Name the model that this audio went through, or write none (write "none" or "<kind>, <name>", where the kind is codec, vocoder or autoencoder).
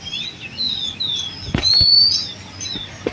none